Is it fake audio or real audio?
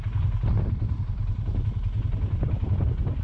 real